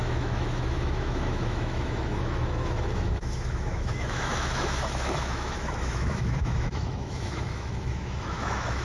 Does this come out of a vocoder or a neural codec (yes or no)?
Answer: yes